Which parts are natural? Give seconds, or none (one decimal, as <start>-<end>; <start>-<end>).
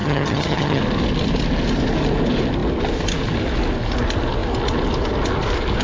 0.8-5.8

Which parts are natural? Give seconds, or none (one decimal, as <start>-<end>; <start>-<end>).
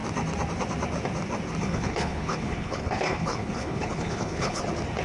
0.0-1.6; 4.6-5.0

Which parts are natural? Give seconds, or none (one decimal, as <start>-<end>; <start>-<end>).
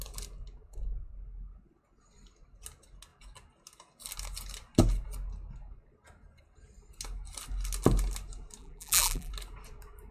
0.0-8.6; 9.3-10.1